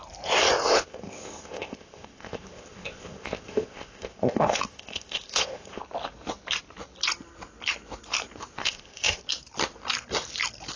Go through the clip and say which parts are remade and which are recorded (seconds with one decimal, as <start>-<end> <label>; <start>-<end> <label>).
0.0-0.7 recorded; 0.7-5.8 remade; 5.8-8.6 recorded; 8.6-9.2 remade; 9.2-10.8 recorded